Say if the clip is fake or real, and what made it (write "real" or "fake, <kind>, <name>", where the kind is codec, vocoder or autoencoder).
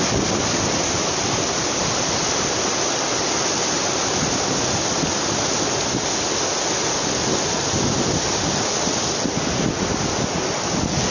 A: real